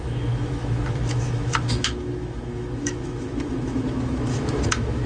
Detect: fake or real fake